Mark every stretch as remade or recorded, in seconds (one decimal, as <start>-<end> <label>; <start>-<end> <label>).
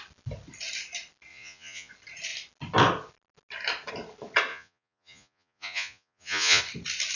0.0-1.3 recorded; 1.3-1.9 remade; 1.9-4.5 recorded; 4.5-6.6 remade; 6.6-7.2 recorded